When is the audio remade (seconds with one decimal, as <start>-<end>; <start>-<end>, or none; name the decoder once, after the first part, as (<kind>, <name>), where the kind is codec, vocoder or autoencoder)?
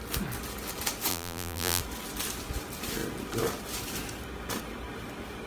1.1-1.8 (vocoder, BigVGAN v2)